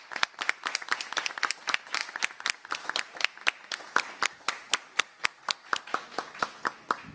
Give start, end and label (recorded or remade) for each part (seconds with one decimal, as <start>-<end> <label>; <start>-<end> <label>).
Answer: 0.0-7.1 recorded